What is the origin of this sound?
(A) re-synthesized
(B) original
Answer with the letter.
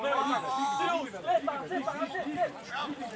A